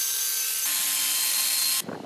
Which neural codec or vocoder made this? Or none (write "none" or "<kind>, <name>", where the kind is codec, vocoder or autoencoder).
none